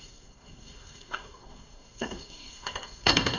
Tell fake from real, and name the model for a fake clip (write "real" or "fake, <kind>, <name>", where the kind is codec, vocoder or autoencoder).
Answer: fake, codec, SNAC